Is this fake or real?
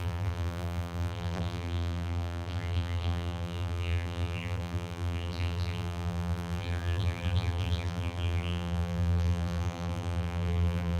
fake